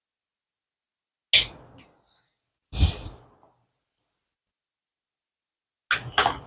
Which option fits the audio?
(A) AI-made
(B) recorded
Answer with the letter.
B